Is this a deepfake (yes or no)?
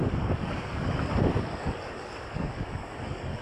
yes